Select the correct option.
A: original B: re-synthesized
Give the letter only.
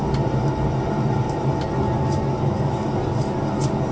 A